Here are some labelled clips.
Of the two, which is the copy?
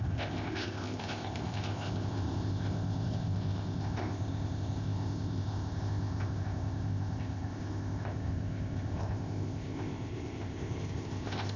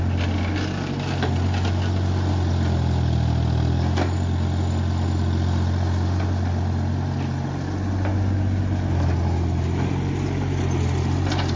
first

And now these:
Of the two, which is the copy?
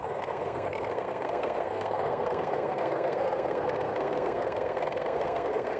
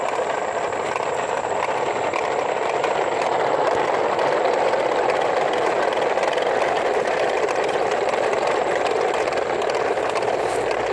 first